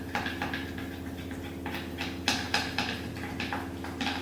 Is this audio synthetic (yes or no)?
no